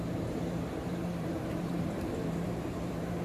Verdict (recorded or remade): remade